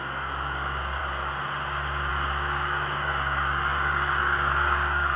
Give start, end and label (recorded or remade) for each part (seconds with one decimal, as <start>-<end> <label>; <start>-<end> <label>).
0.0-1.0 remade; 1.0-2.1 recorded; 2.1-5.2 remade